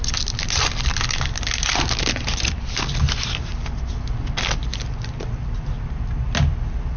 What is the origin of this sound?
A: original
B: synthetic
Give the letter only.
A